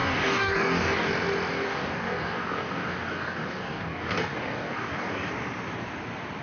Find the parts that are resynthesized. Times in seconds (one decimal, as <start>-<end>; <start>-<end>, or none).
0.0-1.1; 1.5-5.3